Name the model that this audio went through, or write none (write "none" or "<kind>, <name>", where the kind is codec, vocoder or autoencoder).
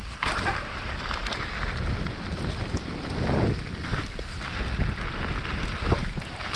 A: none